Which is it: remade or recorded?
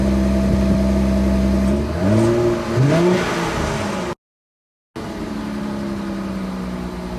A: recorded